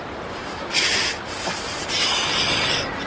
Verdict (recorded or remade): remade